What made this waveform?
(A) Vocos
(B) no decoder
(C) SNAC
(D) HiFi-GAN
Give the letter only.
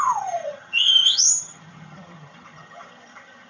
D